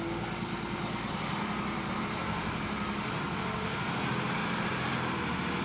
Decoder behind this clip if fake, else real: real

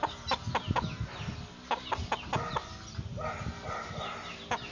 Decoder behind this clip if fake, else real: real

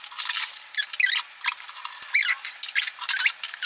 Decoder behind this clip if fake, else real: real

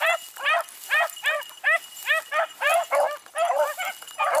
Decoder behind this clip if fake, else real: real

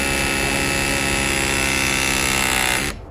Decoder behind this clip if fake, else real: real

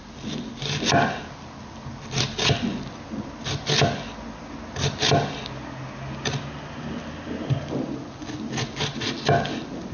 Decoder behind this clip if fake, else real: real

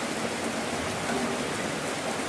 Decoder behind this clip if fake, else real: real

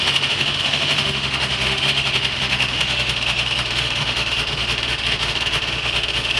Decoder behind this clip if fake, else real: fake, autoencoder, DAC-VAE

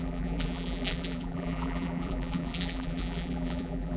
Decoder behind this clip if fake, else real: fake, vocoder, BigVGAN v2